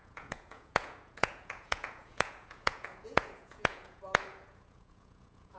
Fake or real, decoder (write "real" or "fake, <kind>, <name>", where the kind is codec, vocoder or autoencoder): fake, vocoder, Vocos